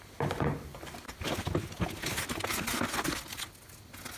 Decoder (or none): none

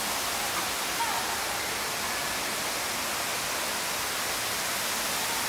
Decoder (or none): none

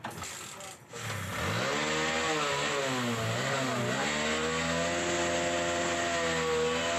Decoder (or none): none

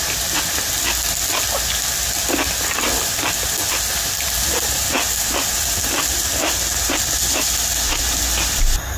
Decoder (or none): none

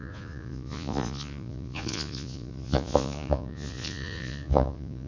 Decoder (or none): vocoder, Vocos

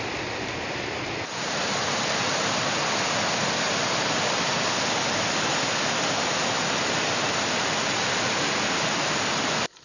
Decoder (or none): none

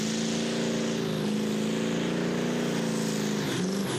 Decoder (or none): none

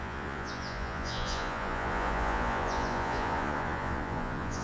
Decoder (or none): vocoder, Vocos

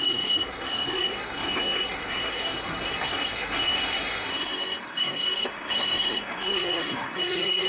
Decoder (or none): codec, SNAC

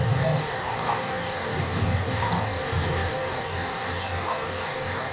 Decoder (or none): codec, DAC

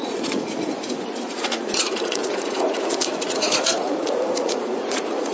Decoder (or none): vocoder, Vocos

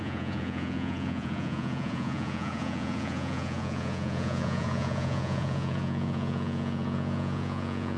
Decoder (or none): vocoder, Vocos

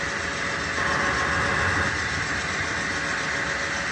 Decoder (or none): none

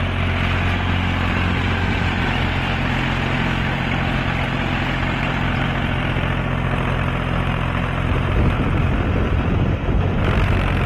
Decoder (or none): none